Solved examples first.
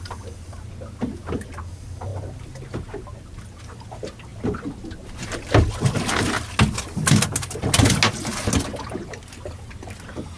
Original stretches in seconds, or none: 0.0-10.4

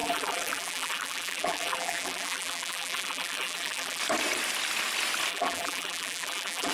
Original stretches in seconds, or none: 4.0-5.3

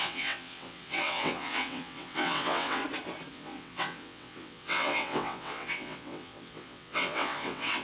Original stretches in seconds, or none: 2.8-3.3

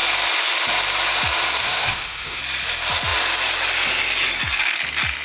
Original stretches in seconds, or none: 0.0-1.6; 2.4-5.2